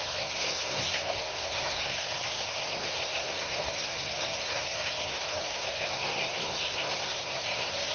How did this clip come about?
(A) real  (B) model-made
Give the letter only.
B